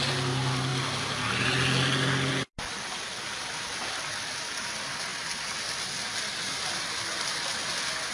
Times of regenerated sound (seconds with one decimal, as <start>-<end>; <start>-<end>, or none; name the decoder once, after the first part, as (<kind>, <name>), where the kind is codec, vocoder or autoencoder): none